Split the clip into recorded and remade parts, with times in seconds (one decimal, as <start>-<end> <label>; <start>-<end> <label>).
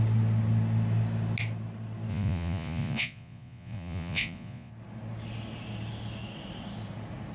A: 0.0-2.1 recorded; 2.1-4.7 remade; 4.7-7.3 recorded